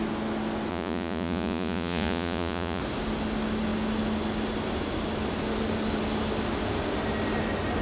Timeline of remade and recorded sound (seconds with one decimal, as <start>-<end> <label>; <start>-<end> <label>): 0.0-0.7 recorded; 0.7-2.8 remade; 2.8-7.8 recorded